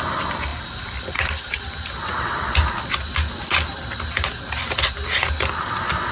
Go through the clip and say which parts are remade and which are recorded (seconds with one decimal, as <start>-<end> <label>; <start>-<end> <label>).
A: 0.0-6.1 recorded